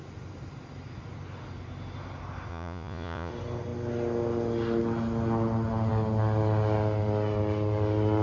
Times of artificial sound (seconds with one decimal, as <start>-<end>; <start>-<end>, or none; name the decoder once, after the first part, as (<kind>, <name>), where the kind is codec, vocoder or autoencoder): 2.5-3.3 (vocoder, Vocos)